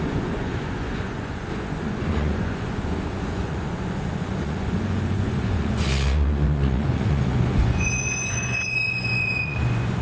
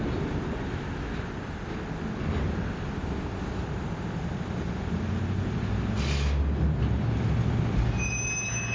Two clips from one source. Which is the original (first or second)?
second